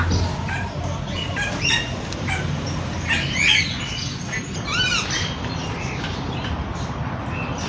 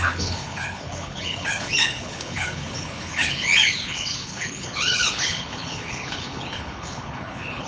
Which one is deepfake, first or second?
second